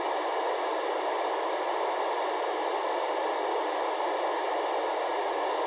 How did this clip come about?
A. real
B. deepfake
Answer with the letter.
A